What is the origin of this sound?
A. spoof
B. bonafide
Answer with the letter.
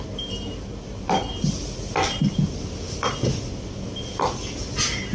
B